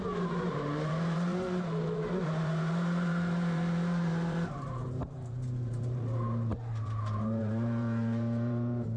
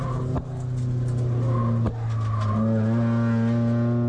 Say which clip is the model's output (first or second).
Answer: first